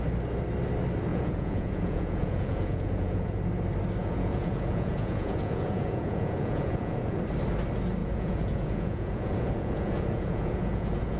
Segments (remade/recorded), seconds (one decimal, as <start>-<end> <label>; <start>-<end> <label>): 0.0-1.1 recorded; 1.1-3.5 remade; 3.5-4.0 recorded; 4.0-7.2 remade; 7.2-8.0 recorded; 8.0-11.2 remade